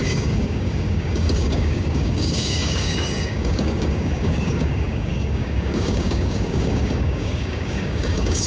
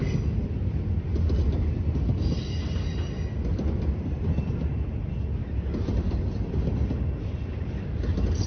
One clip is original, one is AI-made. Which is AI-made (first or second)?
first